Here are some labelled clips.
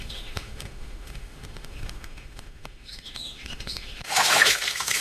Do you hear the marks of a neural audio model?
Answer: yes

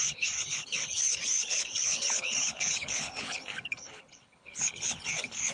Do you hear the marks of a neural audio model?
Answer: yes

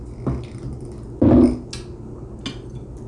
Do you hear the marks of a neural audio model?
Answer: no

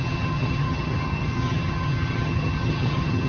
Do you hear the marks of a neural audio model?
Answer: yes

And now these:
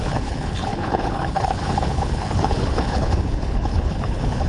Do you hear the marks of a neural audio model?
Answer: yes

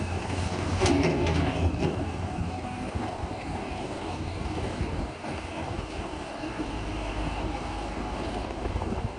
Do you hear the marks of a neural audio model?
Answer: yes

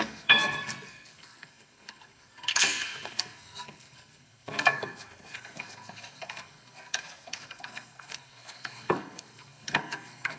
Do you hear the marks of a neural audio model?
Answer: yes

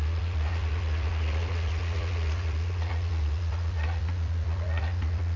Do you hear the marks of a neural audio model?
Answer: yes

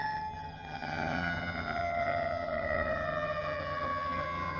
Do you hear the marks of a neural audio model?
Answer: yes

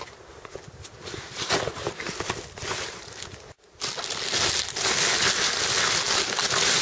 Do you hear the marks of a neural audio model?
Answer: no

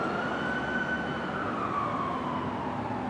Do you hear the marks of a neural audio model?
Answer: no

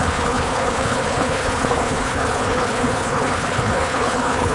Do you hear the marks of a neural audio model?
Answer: yes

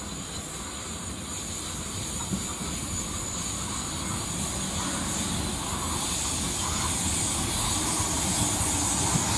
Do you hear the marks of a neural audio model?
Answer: no